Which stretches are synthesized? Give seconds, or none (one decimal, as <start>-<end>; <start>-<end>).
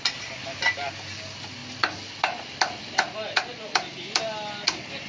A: none